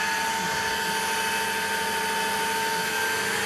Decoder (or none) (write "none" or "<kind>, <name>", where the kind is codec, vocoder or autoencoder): none